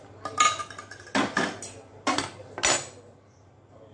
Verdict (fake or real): real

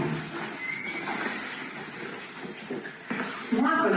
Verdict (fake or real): real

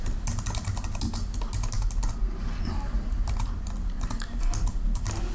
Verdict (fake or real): real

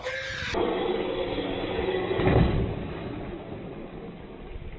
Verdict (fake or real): real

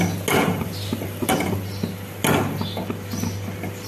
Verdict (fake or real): real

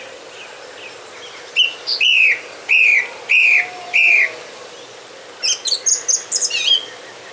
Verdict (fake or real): real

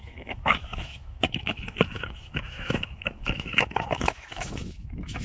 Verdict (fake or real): fake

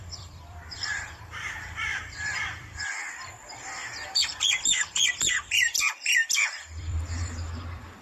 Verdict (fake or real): fake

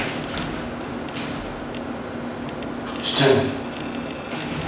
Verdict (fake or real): real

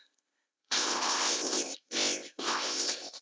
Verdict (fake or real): fake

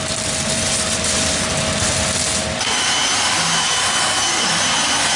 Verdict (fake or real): fake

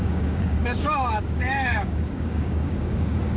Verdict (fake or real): fake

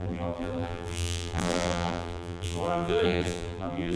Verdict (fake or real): fake